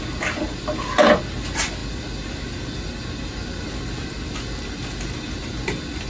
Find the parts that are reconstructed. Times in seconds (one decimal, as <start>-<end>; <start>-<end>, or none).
none